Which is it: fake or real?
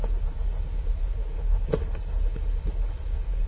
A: real